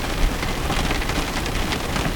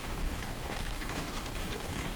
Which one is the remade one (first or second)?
second